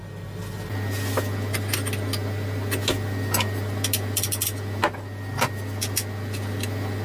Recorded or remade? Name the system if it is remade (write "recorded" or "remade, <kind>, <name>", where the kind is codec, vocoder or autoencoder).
recorded